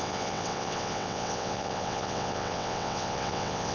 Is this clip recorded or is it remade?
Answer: remade